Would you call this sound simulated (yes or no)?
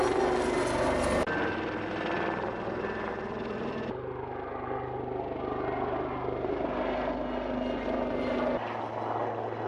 no